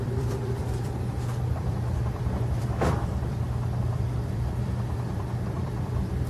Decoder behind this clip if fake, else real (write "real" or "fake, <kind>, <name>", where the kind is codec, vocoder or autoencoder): fake, vocoder, BigVGAN v2